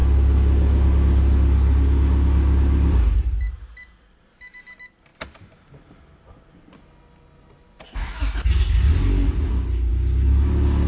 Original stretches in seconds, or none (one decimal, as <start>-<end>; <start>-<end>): 0.0-10.9